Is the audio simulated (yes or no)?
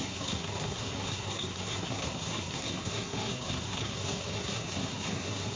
yes